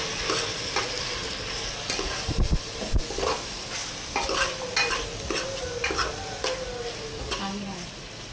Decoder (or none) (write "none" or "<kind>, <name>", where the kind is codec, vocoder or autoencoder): none